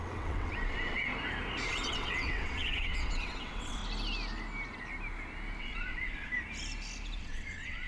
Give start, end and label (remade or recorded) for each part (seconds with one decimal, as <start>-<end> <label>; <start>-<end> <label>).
0.0-1.1 remade; 1.1-1.7 recorded; 1.7-3.8 remade; 3.8-5.6 recorded; 5.6-6.3 remade; 6.3-7.2 recorded; 7.2-7.9 remade